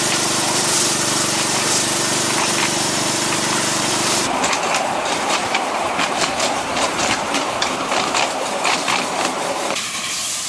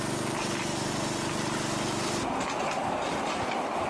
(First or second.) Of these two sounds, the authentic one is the second